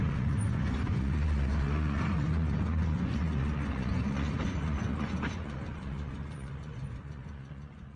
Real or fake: fake